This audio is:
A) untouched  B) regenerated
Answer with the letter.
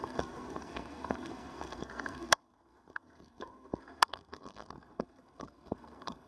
B